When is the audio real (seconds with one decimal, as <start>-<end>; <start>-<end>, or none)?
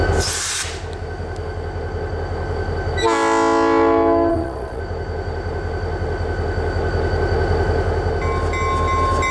0.0-4.3; 4.8-9.3